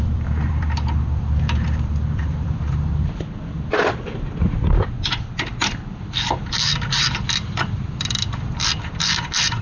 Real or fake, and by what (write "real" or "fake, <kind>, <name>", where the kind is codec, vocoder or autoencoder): fake, vocoder, BigVGAN v2